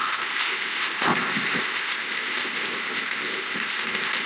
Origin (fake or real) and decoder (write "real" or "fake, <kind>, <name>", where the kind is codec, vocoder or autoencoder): fake, codec, ZipCodec